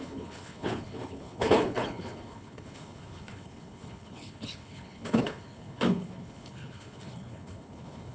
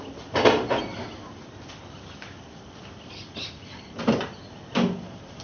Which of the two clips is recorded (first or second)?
second